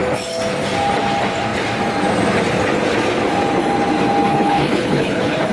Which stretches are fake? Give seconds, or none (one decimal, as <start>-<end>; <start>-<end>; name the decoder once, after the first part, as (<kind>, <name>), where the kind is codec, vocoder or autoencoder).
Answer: 4.3-5.5 (codec, HILCodec)